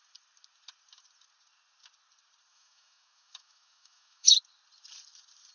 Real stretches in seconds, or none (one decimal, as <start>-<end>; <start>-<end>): 0.0-2.5; 4.3-5.5